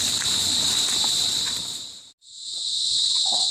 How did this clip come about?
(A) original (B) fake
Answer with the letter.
A